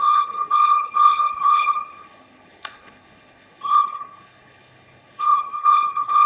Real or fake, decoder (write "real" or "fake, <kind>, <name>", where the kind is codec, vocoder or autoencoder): fake, codec, HILCodec